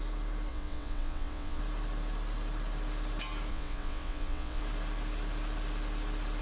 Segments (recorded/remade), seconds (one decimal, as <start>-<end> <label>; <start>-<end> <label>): 0.0-0.5 recorded; 0.5-1.6 remade; 1.6-3.5 recorded; 3.5-4.6 remade; 4.6-6.4 recorded